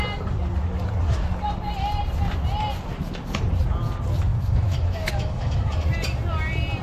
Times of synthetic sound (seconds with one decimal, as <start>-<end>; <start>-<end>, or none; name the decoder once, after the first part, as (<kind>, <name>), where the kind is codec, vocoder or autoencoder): 4.3-5.7 (autoencoder, DAC-VAE)